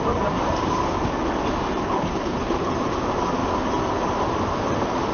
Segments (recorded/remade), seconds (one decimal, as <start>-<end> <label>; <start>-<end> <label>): 0.0-1.8 recorded; 1.8-2.7 remade; 2.7-5.1 recorded